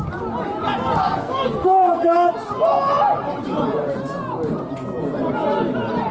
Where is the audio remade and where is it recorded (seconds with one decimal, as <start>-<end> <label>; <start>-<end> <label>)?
0.0-1.0 recorded; 1.0-2.3 remade; 2.3-6.1 recorded